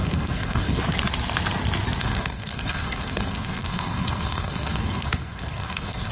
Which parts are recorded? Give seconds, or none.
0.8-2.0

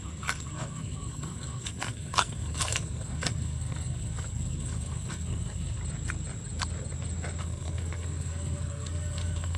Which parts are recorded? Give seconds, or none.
5.8-7.4

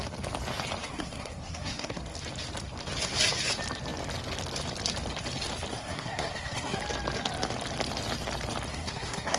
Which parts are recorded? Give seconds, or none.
0.0-0.8; 2.0-5.8; 6.8-8.7